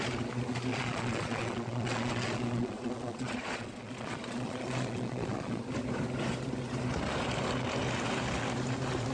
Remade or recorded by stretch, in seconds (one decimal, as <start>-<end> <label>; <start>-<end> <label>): 0.0-0.7 recorded; 0.7-5.6 remade; 5.6-9.1 recorded